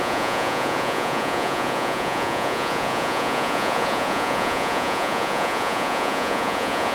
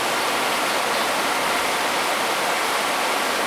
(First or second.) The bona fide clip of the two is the second